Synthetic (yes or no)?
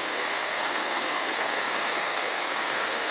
yes